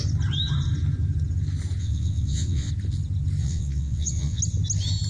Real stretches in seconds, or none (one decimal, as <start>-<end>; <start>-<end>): 0.0-1.8; 2.7-3.4; 4.4-5.1